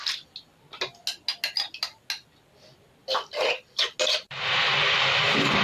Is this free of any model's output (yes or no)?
yes